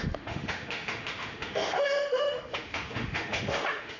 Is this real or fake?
fake